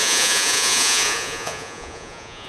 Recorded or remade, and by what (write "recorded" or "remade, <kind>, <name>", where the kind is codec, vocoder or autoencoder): remade, vocoder, Vocos